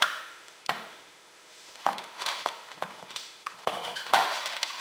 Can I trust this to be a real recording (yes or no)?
no